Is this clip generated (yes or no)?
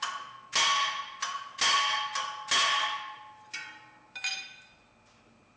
no